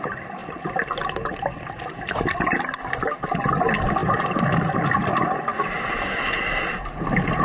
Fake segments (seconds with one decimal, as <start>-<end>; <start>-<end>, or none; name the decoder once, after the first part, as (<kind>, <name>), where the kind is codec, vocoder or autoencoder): none